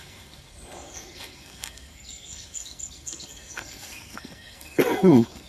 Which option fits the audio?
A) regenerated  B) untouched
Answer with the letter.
A